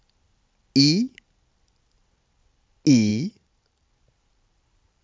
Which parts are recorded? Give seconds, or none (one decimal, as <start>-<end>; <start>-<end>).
0.0-3.1; 3.9-5.0